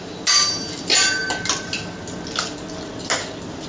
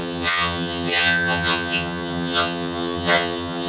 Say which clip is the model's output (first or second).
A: second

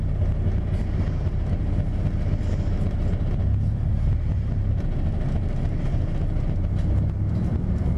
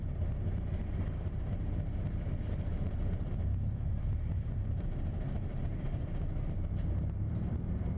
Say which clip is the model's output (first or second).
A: second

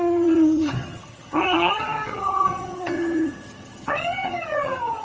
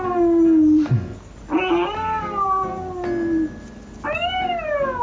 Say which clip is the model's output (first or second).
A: first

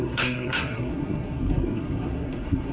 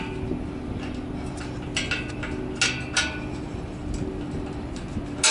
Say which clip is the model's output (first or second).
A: first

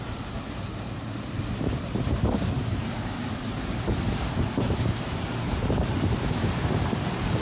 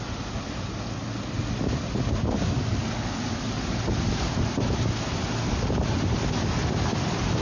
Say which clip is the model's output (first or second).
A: first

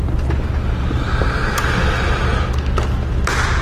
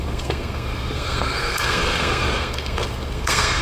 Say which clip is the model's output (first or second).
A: second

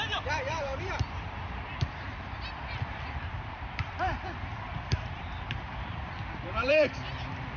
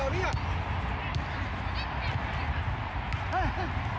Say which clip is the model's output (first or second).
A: first